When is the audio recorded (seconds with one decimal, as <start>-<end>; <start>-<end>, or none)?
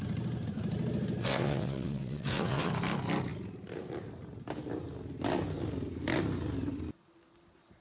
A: 0.0-1.2; 2.7-7.8